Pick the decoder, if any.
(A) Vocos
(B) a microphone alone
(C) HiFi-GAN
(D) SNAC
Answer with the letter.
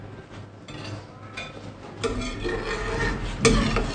B